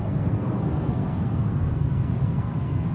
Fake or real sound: fake